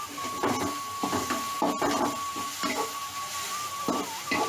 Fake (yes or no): no